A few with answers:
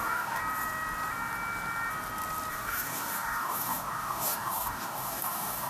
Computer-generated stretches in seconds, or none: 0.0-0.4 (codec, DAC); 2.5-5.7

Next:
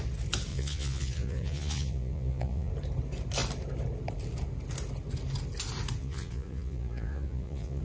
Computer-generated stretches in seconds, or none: 0.5-2.7 (vocoder, Vocos); 6.0-7.8

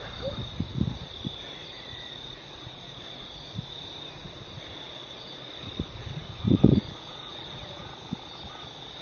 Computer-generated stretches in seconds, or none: 0.4-3.7 (vocoder, Vocos); 5.0-8.1

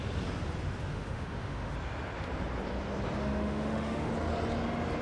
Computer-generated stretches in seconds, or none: 0.9-1.7 (autoencoder, DAC-VAE); 3.2-4.1

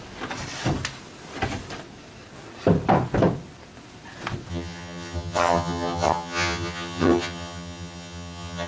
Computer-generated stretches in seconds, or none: 4.5-8.7 (vocoder, HiFi-GAN)